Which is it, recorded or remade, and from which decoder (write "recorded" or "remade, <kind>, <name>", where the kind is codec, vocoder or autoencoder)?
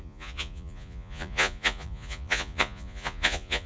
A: remade, vocoder, Vocos